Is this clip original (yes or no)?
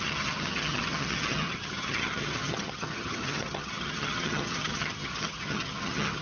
no